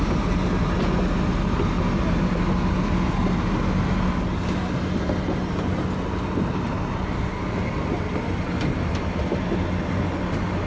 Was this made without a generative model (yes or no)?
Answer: yes